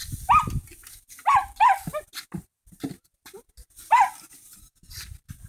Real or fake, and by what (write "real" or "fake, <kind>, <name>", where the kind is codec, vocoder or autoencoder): real